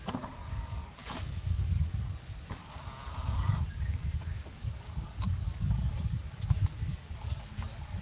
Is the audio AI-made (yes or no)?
yes